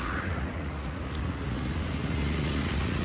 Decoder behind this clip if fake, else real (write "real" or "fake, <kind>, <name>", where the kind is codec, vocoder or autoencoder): fake, vocoder, Vocos